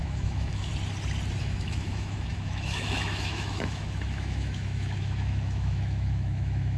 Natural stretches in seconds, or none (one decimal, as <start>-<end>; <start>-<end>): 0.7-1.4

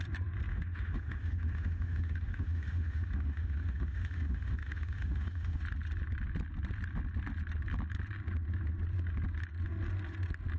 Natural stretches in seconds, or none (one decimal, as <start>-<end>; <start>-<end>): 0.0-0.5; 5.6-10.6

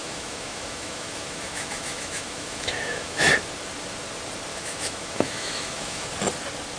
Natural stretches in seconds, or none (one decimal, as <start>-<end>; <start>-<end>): 3.3-4.5; 6.1-6.8